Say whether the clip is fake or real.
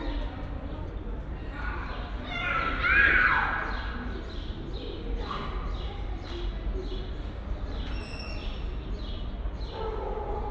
real